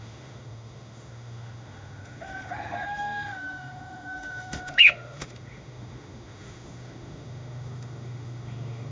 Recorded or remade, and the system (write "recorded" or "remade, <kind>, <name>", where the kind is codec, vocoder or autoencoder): remade, autoencoder, DAC-VAE